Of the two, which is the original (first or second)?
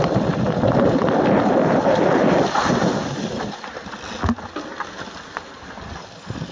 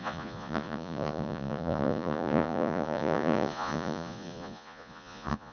first